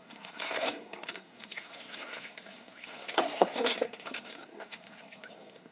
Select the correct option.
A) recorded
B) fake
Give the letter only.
B